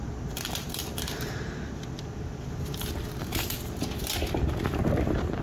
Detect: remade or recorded remade